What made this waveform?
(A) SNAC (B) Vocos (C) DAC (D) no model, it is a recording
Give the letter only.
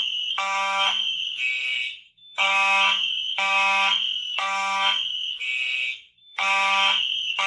A